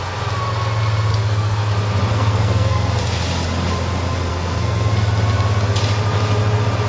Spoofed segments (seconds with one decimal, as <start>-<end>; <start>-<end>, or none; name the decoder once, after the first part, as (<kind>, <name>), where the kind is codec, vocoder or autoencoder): 1.1-1.7 (codec, SNAC); 2.1-3.0; 4.3-4.9